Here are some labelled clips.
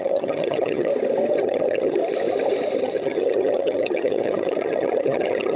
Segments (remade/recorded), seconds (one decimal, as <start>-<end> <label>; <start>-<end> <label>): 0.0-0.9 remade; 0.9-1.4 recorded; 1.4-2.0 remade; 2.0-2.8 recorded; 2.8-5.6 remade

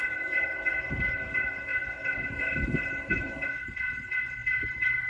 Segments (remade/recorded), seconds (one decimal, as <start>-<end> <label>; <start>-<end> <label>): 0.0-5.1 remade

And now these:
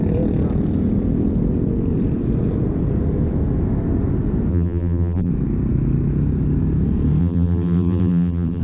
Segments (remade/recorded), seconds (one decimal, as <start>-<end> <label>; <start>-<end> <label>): 0.0-4.5 recorded; 4.5-5.3 remade; 5.3-7.2 recorded; 7.2-8.6 remade